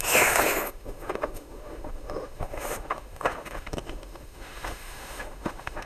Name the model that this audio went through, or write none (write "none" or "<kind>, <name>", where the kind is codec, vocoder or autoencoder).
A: autoencoder, DAC-VAE